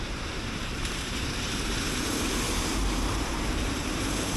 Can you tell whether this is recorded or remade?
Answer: remade